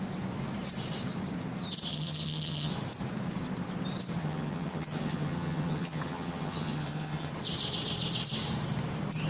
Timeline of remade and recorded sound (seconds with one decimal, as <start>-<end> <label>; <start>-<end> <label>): 0.0-1.9 recorded; 1.9-2.7 remade; 2.7-4.2 recorded; 4.2-7.3 remade; 7.3-9.3 recorded